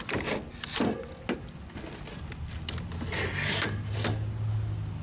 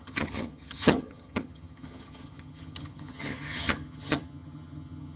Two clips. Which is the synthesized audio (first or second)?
second